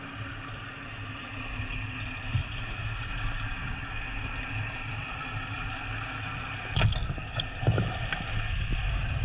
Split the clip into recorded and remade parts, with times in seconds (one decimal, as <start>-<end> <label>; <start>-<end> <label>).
0.0-2.4 recorded; 2.4-3.1 remade; 3.1-9.2 recorded